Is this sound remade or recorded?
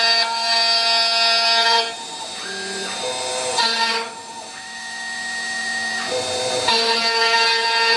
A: remade